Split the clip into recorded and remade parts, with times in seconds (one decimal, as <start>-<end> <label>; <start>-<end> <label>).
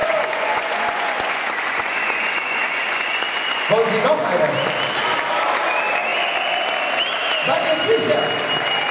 0.0-3.7 remade; 3.7-8.9 recorded